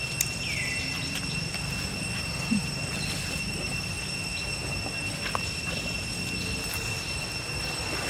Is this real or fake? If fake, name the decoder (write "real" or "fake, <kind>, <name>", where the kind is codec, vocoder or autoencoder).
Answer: real